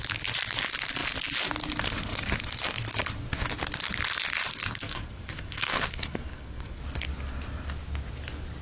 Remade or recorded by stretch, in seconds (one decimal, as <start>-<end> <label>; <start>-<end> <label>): 0.0-4.5 recorded; 4.5-6.8 remade; 6.8-8.6 recorded